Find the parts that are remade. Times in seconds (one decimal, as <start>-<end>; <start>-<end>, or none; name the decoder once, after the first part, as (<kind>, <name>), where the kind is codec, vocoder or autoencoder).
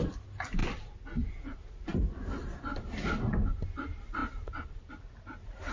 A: none